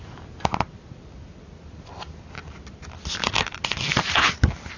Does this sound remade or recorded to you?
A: recorded